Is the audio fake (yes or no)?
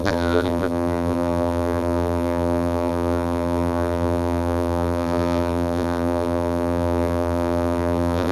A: yes